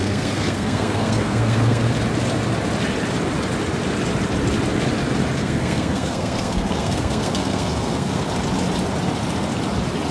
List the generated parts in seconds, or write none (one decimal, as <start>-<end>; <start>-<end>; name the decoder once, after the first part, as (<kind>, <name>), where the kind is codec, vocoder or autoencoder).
0.0-1.9 (codec, SNAC); 5.4-8.3